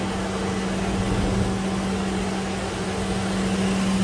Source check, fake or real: real